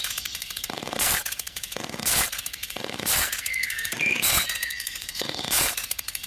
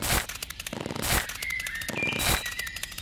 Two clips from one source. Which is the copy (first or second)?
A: first